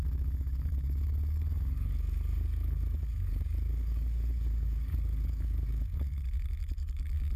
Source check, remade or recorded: remade